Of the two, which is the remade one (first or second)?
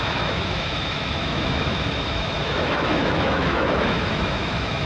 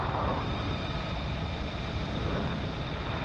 first